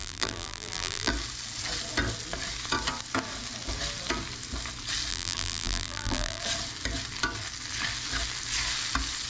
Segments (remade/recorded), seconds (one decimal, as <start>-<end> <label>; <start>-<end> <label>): 0.0-1.1 remade; 1.1-5.1 recorded; 5.1-6.4 remade; 6.4-9.3 recorded